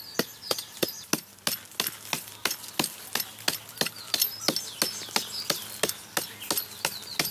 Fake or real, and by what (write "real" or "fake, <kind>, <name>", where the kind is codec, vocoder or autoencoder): real